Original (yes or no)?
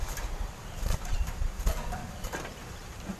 no